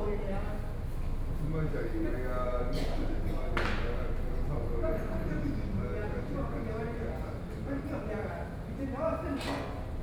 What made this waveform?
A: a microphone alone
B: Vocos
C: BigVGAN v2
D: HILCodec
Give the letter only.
A